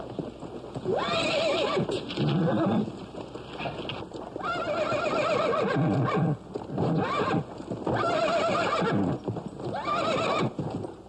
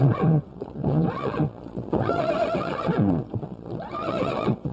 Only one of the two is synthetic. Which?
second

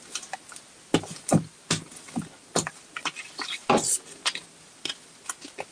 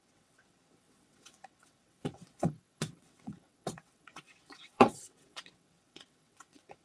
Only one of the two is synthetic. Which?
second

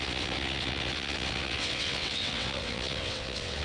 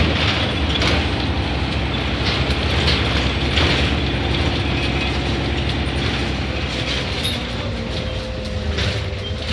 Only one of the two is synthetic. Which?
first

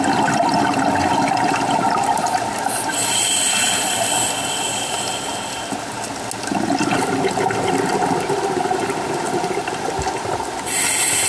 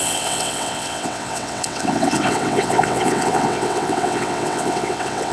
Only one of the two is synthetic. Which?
second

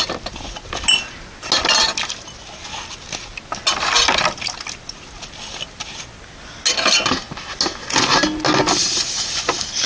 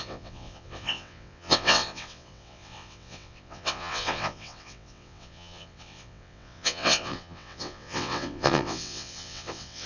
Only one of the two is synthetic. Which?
second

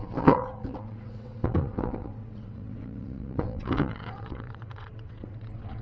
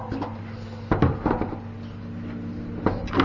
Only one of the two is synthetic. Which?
first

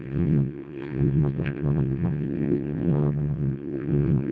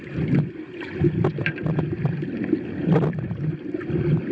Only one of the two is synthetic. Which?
first